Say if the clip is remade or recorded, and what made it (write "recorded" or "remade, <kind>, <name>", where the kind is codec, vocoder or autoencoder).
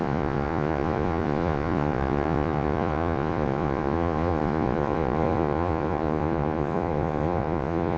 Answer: remade, vocoder, Vocos